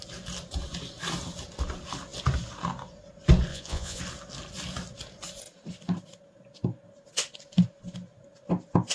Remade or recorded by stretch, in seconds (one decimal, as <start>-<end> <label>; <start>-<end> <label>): 0.0-3.5 recorded; 3.5-4.0 remade; 4.0-8.9 recorded